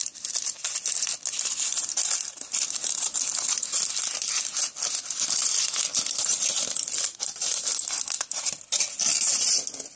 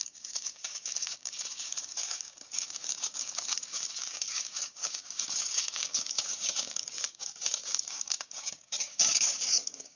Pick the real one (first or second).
first